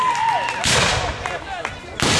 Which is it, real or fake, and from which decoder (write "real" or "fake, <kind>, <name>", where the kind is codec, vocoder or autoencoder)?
real